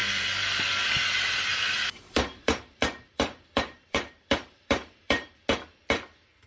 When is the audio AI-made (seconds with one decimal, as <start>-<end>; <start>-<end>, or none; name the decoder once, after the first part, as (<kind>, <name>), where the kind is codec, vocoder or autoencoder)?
1.5-5.4 (vocoder, BigVGAN v2)